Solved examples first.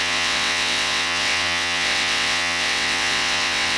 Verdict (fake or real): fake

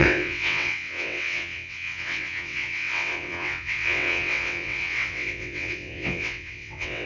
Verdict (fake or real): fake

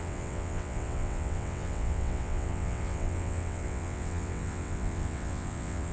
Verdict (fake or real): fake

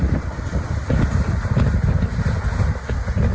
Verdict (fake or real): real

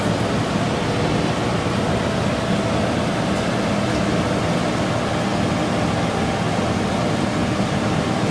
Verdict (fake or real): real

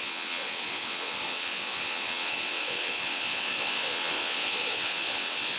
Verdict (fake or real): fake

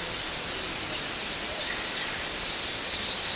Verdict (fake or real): real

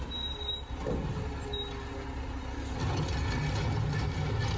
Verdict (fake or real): real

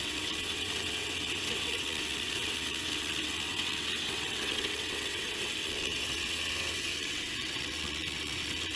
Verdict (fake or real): fake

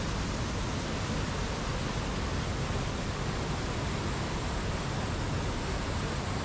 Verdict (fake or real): real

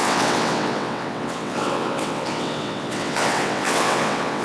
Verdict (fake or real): fake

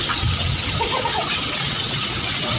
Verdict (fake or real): fake